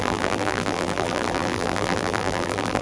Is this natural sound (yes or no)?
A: no